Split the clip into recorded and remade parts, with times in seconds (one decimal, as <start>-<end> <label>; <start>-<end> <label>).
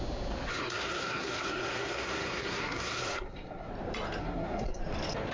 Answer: 0.0-0.5 recorded; 0.5-3.7 remade; 3.7-4.2 recorded; 4.2-4.8 remade; 4.8-5.3 recorded